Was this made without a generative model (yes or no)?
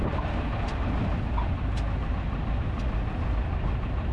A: yes